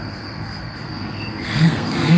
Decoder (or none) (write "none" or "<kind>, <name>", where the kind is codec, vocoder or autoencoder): codec, SNAC